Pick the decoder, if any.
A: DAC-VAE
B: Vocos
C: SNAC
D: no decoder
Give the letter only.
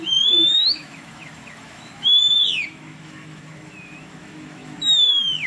A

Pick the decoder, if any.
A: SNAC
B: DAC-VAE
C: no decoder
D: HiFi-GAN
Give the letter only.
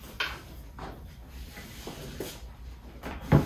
C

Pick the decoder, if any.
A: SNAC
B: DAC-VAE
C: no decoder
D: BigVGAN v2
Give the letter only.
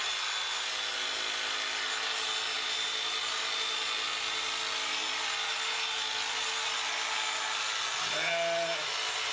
C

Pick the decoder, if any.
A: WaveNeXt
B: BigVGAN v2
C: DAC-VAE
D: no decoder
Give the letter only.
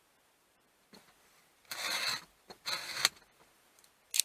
D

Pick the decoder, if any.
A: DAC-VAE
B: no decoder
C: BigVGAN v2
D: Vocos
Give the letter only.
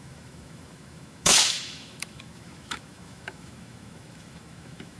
A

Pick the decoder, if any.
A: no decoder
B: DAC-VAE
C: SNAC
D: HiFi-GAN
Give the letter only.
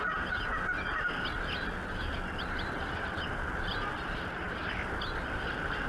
A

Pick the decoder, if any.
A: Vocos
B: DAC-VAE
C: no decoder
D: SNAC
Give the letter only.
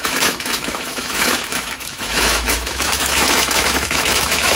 B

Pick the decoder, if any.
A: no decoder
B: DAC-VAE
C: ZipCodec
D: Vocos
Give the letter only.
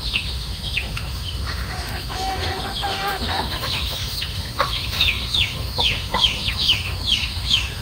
B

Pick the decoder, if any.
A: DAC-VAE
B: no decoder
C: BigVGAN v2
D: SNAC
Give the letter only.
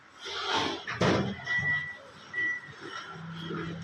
B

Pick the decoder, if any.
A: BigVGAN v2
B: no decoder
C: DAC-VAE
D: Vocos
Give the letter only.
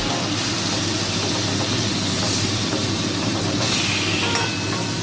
B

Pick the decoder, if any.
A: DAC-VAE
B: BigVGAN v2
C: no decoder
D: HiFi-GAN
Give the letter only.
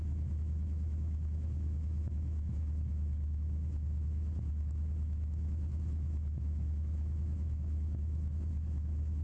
A